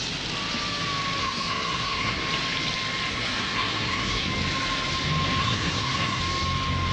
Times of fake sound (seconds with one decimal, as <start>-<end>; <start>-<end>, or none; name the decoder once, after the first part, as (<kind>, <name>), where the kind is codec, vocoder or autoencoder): 1.2-2.2 (codec, SNAC); 3.1-4.3; 5.4-6.2